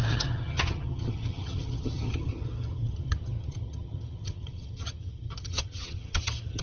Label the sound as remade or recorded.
remade